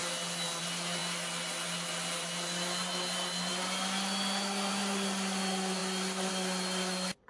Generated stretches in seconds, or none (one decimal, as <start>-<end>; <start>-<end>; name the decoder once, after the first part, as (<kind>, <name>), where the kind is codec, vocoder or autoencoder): none